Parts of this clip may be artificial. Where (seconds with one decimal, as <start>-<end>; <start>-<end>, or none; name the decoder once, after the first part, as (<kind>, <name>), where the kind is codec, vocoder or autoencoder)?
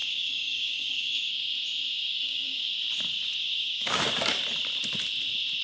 0.0-1.1 (codec, DAC); 2.1-2.7; 3.4-4.0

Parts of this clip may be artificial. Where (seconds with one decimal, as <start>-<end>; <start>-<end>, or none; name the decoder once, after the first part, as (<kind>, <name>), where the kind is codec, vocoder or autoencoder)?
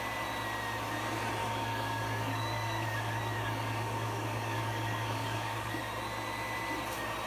1.4-5.8 (codec, DAC)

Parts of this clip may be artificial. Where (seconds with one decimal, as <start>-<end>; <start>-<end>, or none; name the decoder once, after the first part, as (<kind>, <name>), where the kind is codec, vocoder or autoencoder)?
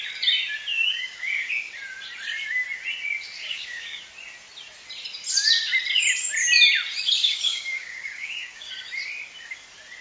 0.7-1.5 (codec, DAC); 3.4-4.0; 7.2-8.7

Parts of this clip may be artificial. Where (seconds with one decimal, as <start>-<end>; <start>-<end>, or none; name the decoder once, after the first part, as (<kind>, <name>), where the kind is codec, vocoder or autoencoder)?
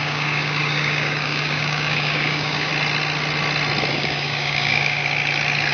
0.0-2.7 (codec, DAC); 3.9-5.0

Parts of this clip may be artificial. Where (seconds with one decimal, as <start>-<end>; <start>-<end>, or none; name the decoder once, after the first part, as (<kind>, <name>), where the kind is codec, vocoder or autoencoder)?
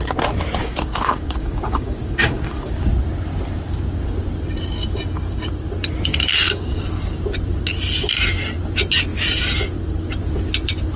0.6-2.7 (codec, DAC); 6.1-6.8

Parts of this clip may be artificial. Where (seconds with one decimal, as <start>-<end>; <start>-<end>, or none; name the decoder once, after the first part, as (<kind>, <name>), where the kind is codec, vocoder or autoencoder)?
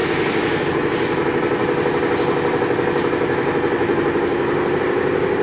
none